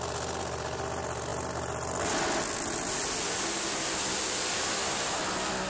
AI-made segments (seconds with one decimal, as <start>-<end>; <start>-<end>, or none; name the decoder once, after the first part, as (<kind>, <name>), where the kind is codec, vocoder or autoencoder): none